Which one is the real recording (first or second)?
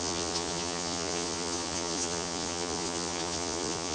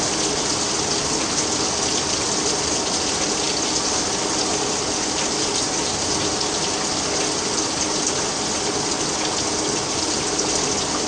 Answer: second